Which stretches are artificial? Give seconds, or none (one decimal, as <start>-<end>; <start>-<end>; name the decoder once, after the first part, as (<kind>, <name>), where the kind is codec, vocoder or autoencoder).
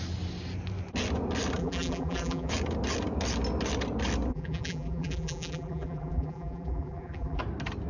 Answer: 1.6-2.5 (vocoder, BigVGAN v2); 4.3-7.4